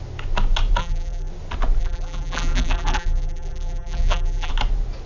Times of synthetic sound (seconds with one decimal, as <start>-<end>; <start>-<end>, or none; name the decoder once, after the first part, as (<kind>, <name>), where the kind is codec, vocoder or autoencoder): 0.8-1.3 (vocoder, BigVGAN v2); 1.8-4.5

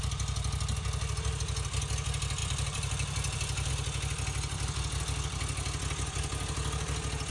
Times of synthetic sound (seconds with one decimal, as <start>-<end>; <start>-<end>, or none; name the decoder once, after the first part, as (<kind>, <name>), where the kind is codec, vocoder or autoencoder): 2.4-3.7 (vocoder, BigVGAN v2)

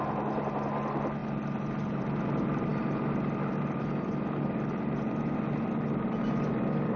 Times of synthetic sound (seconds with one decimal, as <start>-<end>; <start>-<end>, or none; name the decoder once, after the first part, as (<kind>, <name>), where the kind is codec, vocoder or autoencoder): none

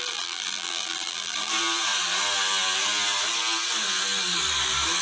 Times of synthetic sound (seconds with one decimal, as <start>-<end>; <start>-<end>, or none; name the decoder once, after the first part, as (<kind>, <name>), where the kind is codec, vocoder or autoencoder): 0.0-1.5 (vocoder, BigVGAN v2)

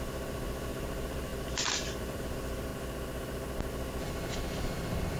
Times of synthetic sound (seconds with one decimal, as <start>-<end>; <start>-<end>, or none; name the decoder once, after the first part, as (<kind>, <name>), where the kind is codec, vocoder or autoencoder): 0.0-2.7 (vocoder, BigVGAN v2); 3.7-5.2

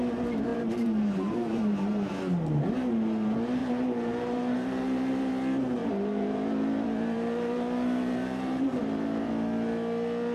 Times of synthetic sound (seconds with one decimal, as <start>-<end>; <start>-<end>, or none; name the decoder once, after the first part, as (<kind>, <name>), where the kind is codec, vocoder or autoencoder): 0.5-2.1 (vocoder, BigVGAN v2); 3.6-5.3; 5.8-9.3

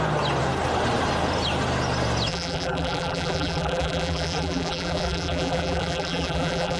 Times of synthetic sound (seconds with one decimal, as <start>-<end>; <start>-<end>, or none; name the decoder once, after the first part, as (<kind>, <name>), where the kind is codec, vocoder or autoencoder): 2.3-6.8 (vocoder, BigVGAN v2)